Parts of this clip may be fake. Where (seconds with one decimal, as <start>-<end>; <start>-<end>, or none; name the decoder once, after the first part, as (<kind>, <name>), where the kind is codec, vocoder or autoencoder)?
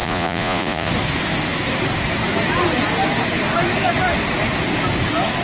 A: 0.0-0.9 (vocoder, Vocos)